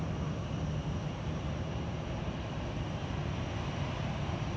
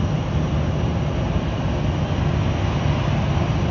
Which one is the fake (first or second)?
first